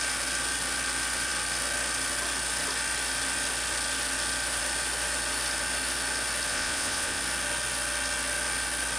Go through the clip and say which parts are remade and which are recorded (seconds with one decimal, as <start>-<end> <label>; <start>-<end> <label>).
0.0-6.5 recorded; 6.5-7.2 remade; 7.2-9.0 recorded